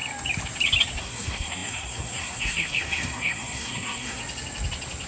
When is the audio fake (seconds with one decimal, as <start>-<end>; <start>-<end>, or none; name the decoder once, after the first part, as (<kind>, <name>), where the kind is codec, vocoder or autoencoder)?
1.0-4.2 (codec, SNAC)